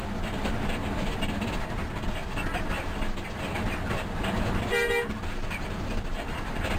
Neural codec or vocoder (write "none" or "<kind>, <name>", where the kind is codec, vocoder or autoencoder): none